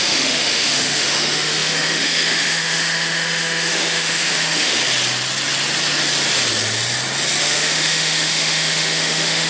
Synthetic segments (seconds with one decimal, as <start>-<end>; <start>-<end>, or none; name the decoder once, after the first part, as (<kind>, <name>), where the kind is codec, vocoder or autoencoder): 0.0-4.8 (autoencoder, DAC-VAE); 7.4-9.5